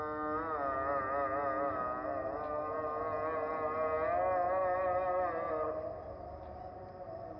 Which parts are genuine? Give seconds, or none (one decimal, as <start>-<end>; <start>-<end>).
0.0-7.4